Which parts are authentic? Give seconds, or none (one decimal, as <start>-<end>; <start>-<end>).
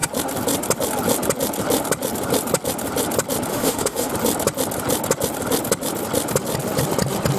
0.0-3.5; 4.1-7.4